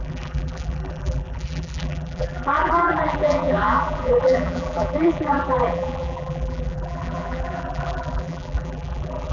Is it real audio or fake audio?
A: fake